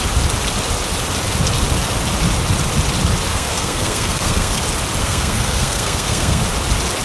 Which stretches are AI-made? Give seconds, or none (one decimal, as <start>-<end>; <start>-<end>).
3.3-4.6; 5.0-6.4